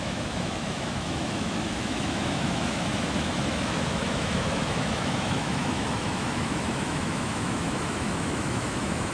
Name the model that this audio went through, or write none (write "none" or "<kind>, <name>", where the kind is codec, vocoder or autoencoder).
autoencoder, DAC-VAE